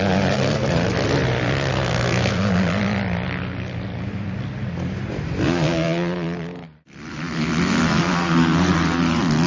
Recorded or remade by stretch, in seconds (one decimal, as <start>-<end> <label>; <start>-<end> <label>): 0.0-1.7 recorded; 1.7-2.4 remade; 2.4-9.5 recorded